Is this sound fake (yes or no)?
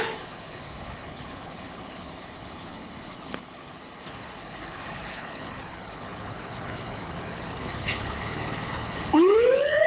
yes